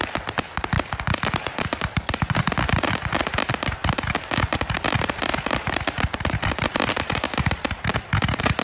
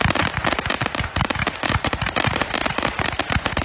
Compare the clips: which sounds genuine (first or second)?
second